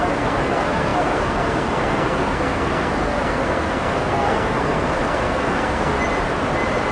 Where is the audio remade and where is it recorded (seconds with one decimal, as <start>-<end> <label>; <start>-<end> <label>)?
0.0-5.9 remade; 5.9-6.9 recorded